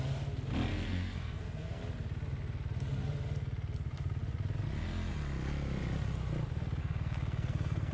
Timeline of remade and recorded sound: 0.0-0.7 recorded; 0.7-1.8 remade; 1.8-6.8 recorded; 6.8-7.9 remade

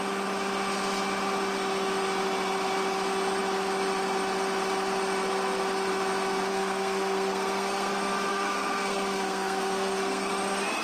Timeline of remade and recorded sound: 0.0-6.5 recorded; 6.5-7.9 remade; 7.9-8.3 recorded; 8.3-10.3 remade; 10.3-10.8 recorded

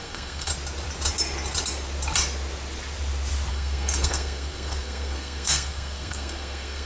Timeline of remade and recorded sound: 0.0-0.5 remade; 0.5-3.5 recorded; 3.5-6.9 remade

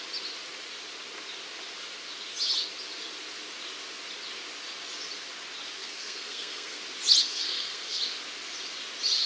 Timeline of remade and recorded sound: 0.0-5.8 recorded; 5.8-6.8 remade; 6.8-7.2 recorded; 7.2-8.0 remade; 8.0-9.3 recorded

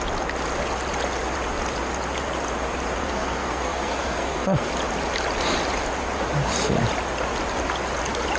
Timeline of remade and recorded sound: 0.0-3.0 recorded; 3.0-4.7 remade; 4.7-8.4 recorded

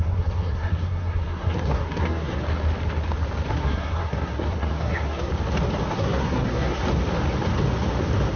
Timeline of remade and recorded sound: 0.0-2.4 remade; 2.4-3.5 recorded; 3.5-5.3 remade; 5.3-5.9 recorded; 5.9-6.8 remade; 6.8-8.4 recorded